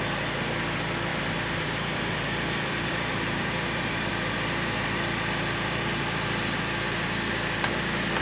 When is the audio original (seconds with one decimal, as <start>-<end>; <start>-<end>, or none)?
0.0-1.1; 4.1-8.2